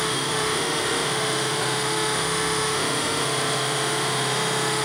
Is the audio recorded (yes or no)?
no